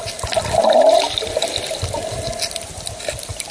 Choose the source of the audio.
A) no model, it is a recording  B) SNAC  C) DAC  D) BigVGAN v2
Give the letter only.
A